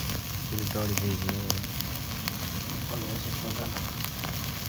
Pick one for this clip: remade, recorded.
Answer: recorded